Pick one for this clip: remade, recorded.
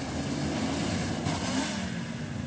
recorded